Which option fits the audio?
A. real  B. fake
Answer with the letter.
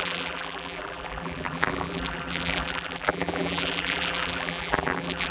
B